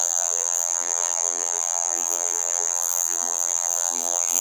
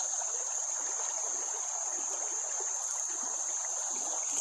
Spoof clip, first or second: first